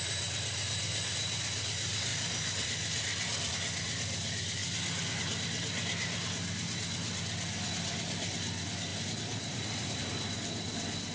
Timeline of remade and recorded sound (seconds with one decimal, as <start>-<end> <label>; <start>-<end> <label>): 0.0-2.1 recorded; 2.1-3.5 remade; 3.5-8.9 recorded; 8.9-10.0 remade; 10.0-11.1 recorded